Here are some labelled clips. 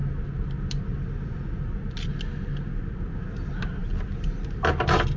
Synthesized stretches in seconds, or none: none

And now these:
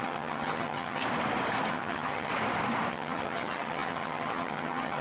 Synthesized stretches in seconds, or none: 0.0-1.0; 1.7-2.3; 2.9-5.0

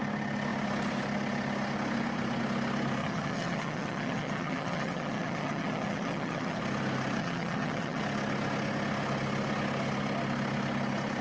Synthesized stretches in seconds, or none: 3.0-6.6; 7.2-8.0

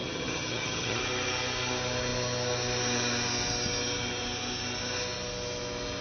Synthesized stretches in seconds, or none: 0.0-1.0

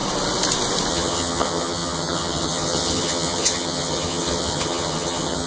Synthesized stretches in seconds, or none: 0.9-5.5

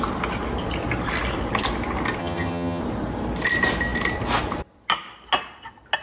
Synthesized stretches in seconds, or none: 2.2-2.8